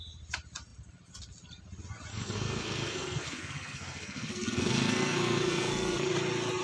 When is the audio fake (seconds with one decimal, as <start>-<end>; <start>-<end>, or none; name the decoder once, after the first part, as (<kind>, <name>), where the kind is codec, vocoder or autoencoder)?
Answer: 2.1-6.1 (codec, SNAC)